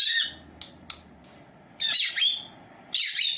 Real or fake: real